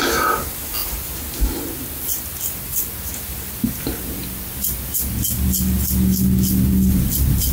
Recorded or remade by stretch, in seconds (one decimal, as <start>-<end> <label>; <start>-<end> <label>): 0.0-7.5 recorded